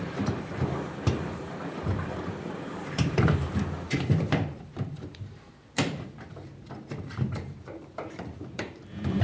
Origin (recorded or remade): remade